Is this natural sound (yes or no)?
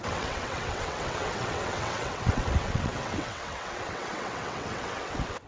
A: no